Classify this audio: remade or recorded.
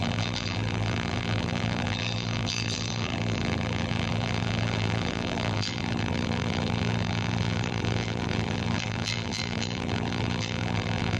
remade